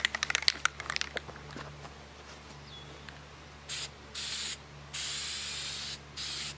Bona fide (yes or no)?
yes